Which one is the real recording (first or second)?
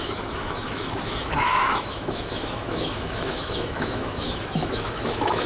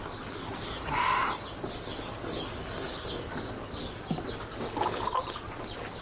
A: second